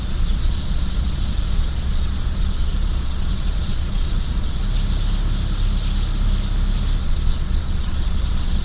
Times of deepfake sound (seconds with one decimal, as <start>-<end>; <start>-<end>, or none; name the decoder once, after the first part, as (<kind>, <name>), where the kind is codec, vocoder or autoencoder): 0.0-4.6 (vocoder, Vocos); 7.0-8.6